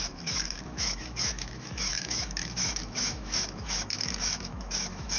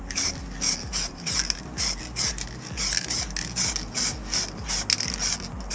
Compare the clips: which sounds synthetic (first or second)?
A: first